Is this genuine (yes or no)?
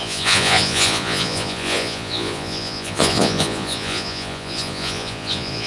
no